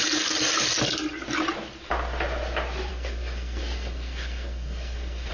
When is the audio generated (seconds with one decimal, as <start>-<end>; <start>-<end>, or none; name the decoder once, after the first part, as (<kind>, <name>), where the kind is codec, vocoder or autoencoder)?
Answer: 2.9-5.3 (codec, SNAC)